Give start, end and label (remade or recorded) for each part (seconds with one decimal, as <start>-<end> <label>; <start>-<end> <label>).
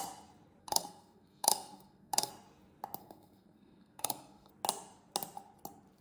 0.0-0.6 recorded; 0.6-2.3 remade; 2.3-3.0 recorded; 3.0-4.5 remade; 4.5-6.0 recorded